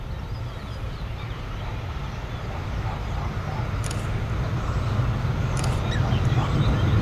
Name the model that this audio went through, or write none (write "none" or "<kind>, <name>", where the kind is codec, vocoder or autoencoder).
none